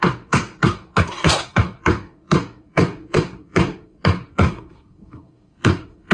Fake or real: fake